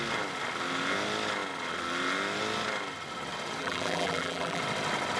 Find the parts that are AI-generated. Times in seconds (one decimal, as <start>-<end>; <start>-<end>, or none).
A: 3.6-4.6

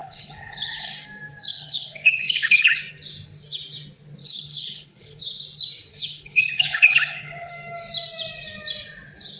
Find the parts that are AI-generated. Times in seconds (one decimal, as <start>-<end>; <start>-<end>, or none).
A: 0.0-0.9; 1.5-2.8; 4.2-5.2; 5.9-7.5

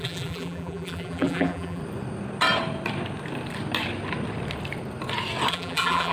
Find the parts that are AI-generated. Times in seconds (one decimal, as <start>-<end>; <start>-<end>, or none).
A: 0.0-1.8; 5.5-6.1

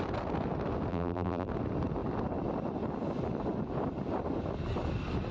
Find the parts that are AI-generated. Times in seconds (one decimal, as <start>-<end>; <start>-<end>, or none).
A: 0.9-1.5

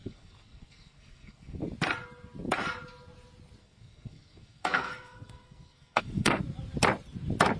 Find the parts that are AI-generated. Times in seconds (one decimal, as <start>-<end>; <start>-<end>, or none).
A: 0.0-1.6; 3.6-6.4

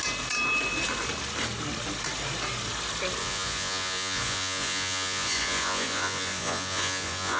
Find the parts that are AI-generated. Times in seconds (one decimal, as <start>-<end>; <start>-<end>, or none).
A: 3.2-7.4

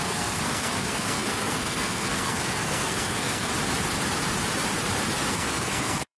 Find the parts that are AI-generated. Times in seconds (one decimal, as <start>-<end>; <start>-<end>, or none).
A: 0.0-3.5; 5.3-6.2

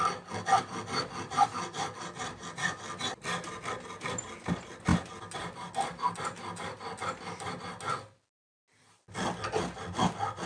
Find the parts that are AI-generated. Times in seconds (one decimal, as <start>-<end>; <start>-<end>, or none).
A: none